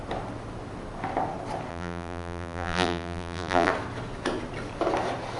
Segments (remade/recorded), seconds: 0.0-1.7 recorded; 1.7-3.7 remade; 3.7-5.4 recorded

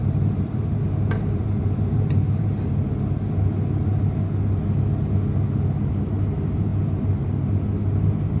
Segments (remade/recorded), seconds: 0.0-2.5 remade; 2.5-5.8 recorded; 5.8-6.7 remade; 6.7-8.4 recorded

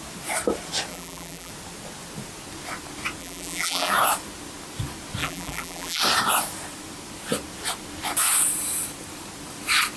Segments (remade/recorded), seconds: 0.0-0.9 recorded; 0.9-1.5 remade; 1.5-3.2 recorded; 3.2-3.9 remade; 3.9-5.2 recorded; 5.2-6.0 remade; 6.0-10.0 recorded

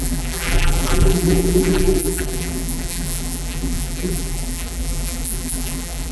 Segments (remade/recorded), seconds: 0.0-6.1 remade

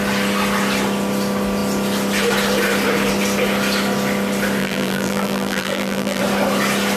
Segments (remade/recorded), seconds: 0.0-4.6 recorded; 4.6-6.2 remade; 6.2-7.0 recorded